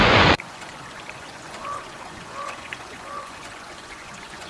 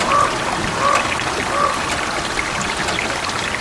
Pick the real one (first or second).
second